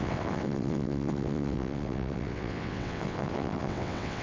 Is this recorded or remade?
remade